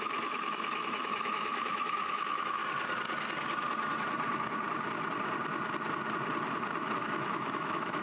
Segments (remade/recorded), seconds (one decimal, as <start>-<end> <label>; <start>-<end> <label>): 0.0-2.6 remade; 2.6-7.0 recorded; 7.0-8.0 remade